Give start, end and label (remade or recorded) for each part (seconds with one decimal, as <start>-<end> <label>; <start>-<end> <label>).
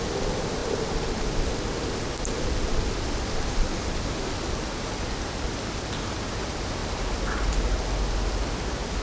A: 0.0-9.0 recorded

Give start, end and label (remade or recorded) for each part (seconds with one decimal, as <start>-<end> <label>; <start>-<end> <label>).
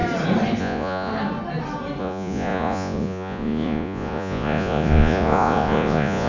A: 0.0-0.6 recorded; 0.6-1.1 remade; 1.1-2.0 recorded; 2.0-6.3 remade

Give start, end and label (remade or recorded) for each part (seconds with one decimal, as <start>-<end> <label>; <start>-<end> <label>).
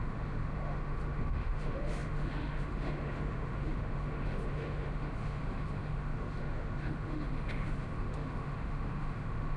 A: 0.0-9.6 remade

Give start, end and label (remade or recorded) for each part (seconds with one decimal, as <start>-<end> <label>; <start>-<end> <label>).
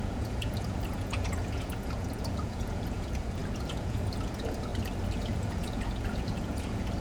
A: 0.0-4.7 remade; 4.7-5.2 recorded; 5.2-7.0 remade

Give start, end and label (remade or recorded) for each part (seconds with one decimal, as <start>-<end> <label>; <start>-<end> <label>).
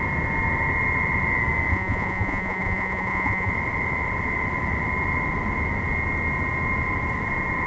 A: 0.0-1.7 recorded; 1.7-3.5 remade; 3.5-7.7 recorded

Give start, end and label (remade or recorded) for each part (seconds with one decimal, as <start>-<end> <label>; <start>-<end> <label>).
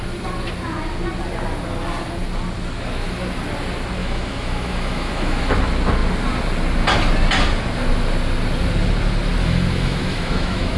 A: 0.0-4.0 recorded; 4.0-5.4 remade; 5.4-9.4 recorded; 9.4-10.8 remade